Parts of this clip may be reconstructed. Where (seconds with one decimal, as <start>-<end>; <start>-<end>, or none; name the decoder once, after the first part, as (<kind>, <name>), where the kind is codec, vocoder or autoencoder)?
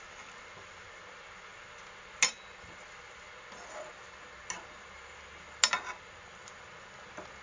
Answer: none